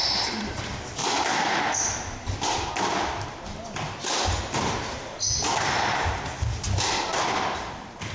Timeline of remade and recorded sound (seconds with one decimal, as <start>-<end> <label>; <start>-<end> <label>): 0.0-8.1 recorded